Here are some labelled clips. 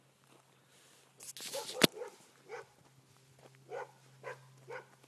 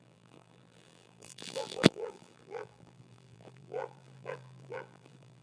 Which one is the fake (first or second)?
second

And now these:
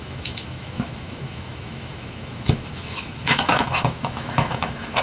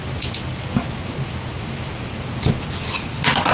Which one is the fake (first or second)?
first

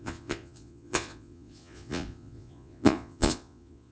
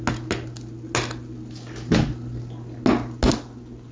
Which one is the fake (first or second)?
first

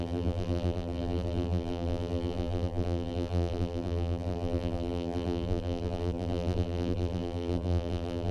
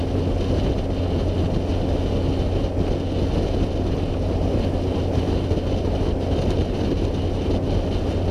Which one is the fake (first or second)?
first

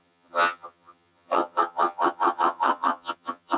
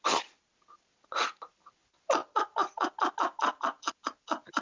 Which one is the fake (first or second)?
first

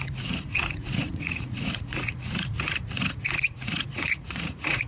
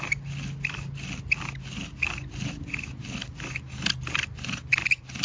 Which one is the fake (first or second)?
first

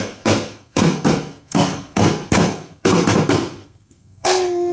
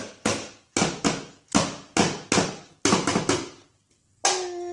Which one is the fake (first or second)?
first